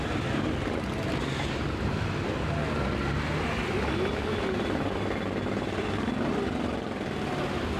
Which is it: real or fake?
real